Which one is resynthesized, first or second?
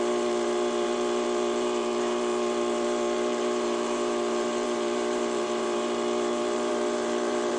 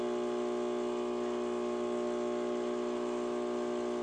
first